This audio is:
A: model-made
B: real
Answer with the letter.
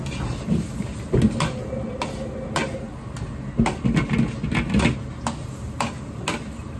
B